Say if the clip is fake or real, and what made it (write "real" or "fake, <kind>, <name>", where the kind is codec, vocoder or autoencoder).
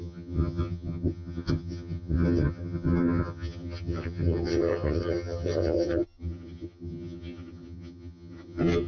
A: fake, vocoder, HiFi-GAN